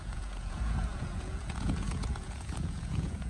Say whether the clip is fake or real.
fake